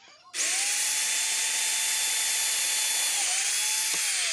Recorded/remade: recorded